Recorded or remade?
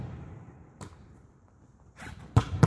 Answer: remade